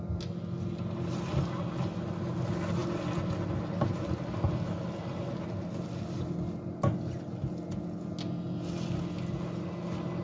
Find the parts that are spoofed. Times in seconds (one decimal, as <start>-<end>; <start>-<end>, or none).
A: none